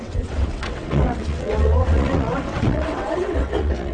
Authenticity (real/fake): fake